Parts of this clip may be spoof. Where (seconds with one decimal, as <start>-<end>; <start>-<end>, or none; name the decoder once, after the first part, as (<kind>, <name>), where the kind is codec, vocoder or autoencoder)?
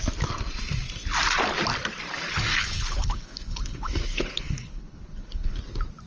2.5-5.6 (codec, HILCodec)